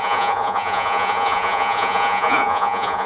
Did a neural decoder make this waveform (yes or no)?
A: yes